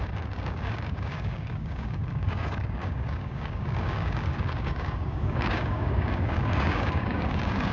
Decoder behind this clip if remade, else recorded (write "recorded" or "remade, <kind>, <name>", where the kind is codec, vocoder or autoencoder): remade, codec, DAC